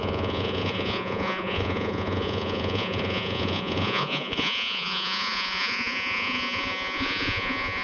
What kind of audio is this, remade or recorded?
remade